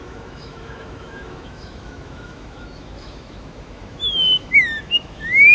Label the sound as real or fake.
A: fake